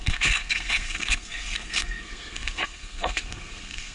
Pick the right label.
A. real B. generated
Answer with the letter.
B